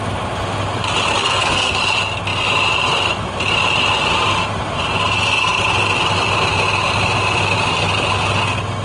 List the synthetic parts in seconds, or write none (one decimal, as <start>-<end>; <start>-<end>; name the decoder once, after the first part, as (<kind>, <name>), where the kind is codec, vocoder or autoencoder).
1.2-1.8 (codec, SNAC)